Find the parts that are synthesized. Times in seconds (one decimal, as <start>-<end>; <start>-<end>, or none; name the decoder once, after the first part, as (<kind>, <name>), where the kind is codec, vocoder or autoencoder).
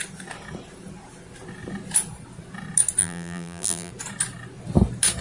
3.0-3.9 (vocoder, BigVGAN v2)